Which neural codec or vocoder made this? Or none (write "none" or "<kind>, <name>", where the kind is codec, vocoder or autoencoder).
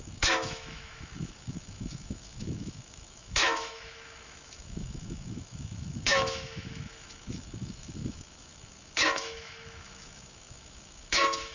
autoencoder, DAC-VAE